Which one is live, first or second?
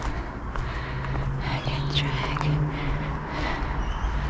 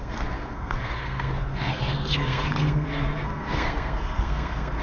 first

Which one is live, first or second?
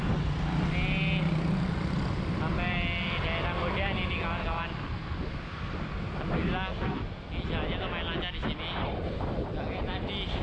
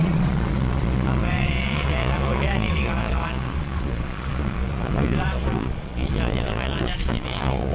first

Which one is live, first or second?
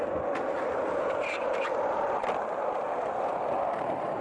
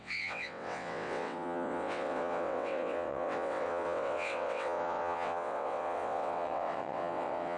first